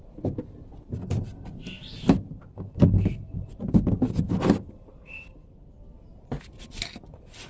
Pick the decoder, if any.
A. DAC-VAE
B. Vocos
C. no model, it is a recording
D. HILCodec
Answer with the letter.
C